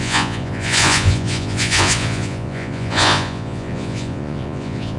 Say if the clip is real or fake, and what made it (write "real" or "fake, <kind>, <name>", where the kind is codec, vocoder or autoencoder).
fake, vocoder, Vocos